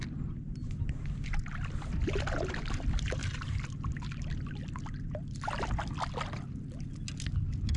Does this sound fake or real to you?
real